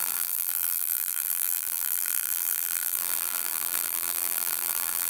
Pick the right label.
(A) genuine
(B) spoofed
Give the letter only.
B